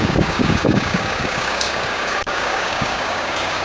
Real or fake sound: fake